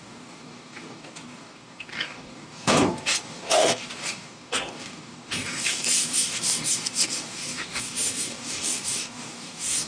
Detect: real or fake fake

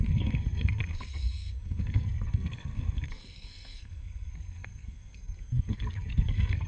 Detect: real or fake fake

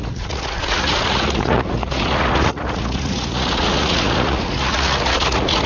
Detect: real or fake fake